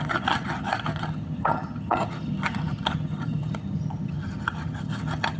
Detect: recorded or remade remade